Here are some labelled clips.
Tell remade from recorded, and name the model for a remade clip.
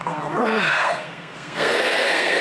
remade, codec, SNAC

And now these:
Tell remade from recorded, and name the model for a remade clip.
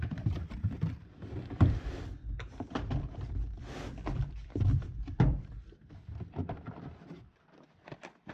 remade, vocoder, BigVGAN v2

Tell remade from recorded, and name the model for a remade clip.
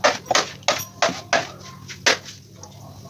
recorded